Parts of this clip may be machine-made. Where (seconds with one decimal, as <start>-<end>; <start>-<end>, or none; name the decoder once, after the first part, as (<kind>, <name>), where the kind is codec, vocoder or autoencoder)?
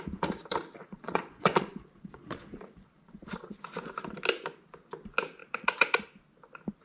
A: 0.8-3.6 (vocoder, Vocos); 5.4-6.0